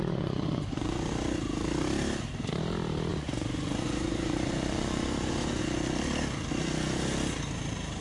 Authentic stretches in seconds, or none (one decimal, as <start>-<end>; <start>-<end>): 1.1-3.1; 5.6-8.0

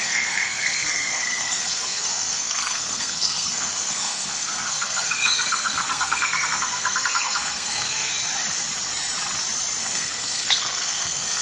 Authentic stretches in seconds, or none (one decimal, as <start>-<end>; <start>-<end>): 8.1-9.8

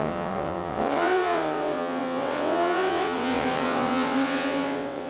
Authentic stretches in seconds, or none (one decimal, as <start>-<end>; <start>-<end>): none

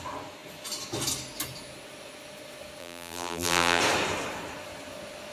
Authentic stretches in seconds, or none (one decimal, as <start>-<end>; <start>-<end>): 0.0-2.8; 3.8-5.3

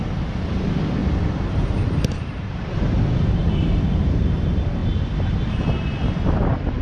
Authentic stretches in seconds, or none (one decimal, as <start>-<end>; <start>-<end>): 0.0-1.0; 2.8-3.4; 4.2-6.8

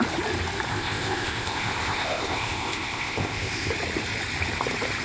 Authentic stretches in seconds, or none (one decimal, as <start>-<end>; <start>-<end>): 0.0-0.7; 3.7-5.0

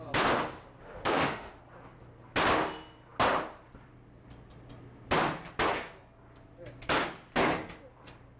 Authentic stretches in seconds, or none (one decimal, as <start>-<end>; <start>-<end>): 0.0-0.8; 1.6-8.4